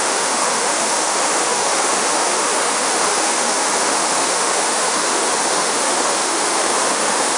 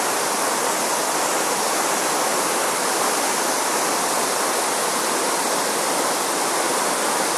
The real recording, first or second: second